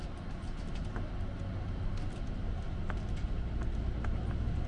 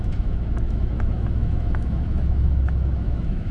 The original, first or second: first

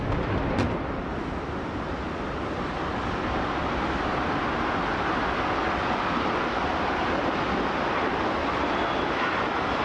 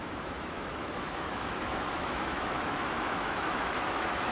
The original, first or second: first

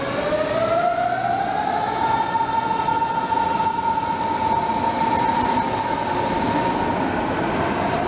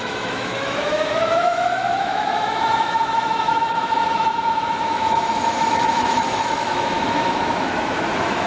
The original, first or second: first